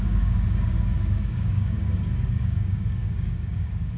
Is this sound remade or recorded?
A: remade